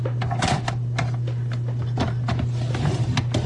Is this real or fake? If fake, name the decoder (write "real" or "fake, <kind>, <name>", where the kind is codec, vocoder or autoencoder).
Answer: real